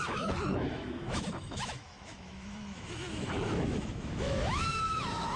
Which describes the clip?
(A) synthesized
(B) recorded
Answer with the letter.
A